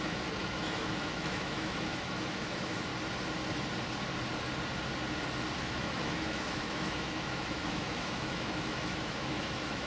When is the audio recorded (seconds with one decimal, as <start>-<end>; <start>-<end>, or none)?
2.9-5.6